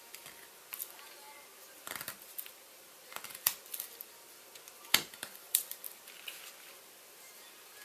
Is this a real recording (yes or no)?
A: no